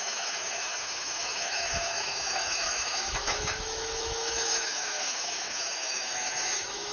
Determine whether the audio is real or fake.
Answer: fake